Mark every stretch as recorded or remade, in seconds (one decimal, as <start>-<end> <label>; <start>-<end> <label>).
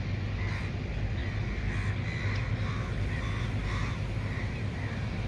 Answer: 0.0-5.3 recorded